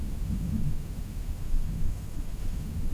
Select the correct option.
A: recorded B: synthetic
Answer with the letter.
B